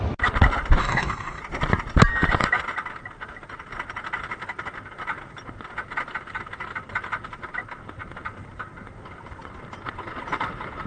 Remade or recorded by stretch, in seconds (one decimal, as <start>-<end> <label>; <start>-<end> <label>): 0.0-0.8 recorded; 0.8-1.4 remade; 1.4-10.9 recorded